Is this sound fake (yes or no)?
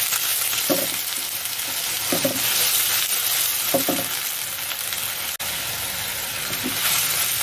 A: no